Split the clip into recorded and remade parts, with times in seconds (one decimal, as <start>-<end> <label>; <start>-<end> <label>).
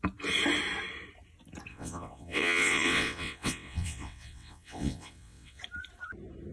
0.0-1.7 recorded; 1.7-5.6 remade; 5.6-6.5 recorded